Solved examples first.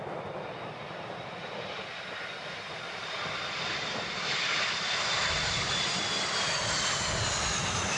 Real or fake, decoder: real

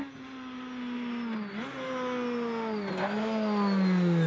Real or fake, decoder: real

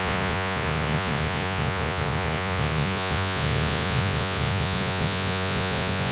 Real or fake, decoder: fake, vocoder, Vocos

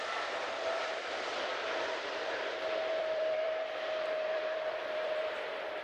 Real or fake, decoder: fake, vocoder, BigVGAN v2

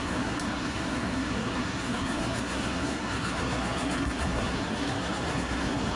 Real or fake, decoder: fake, codec, SNAC